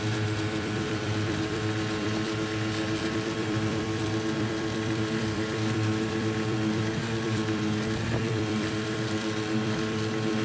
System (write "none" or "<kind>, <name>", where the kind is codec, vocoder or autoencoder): vocoder, BigVGAN v2